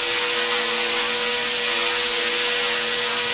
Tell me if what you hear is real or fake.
real